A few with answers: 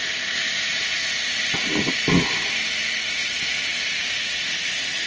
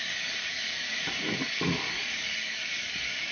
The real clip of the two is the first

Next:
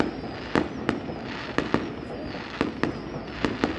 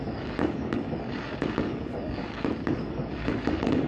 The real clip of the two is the first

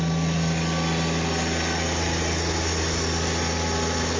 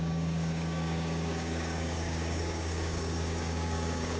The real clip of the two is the first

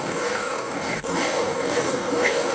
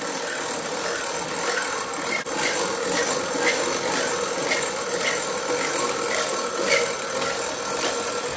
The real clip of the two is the second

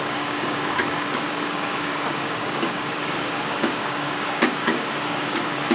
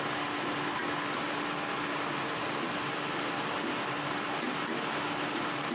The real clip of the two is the second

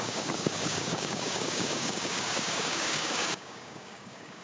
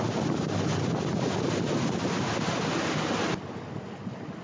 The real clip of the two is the second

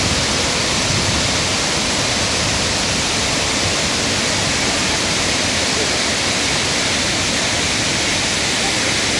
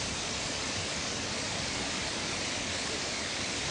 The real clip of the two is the first